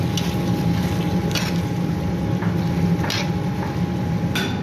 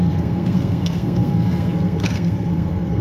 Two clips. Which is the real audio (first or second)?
first